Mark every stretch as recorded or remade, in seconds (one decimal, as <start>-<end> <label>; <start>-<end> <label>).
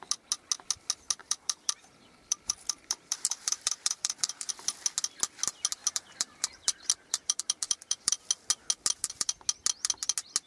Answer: 0.0-1.2 recorded; 1.2-4.5 remade; 4.5-5.8 recorded; 5.8-8.2 remade; 8.2-10.5 recorded